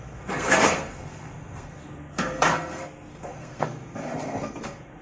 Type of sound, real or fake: fake